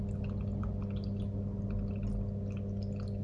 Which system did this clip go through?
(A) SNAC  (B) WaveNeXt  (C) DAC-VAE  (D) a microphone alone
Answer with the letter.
D